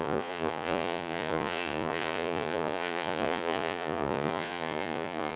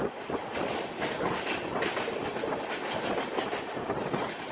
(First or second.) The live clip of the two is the second